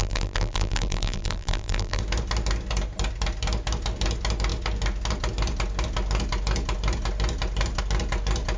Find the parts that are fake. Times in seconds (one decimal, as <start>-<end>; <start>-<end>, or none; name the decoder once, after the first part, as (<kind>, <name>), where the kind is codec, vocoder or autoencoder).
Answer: 0.0-2.0 (vocoder, BigVGAN v2)